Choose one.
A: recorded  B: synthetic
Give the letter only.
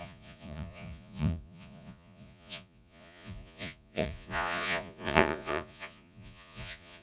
B